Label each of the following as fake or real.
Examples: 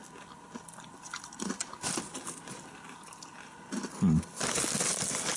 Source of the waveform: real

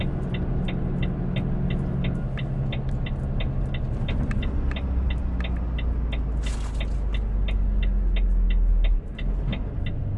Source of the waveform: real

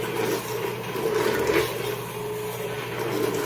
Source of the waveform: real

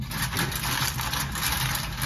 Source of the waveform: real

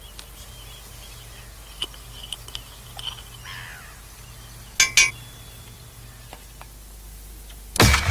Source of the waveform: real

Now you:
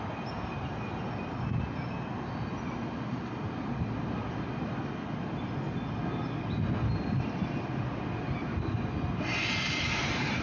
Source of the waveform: real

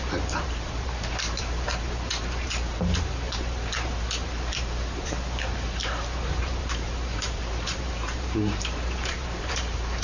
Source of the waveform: fake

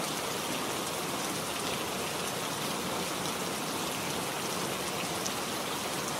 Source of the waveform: real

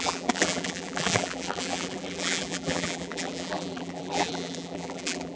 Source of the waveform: fake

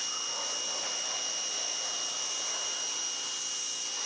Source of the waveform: real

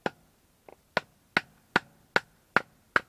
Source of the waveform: real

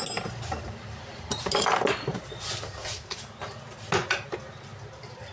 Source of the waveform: real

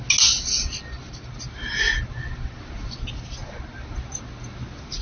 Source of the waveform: real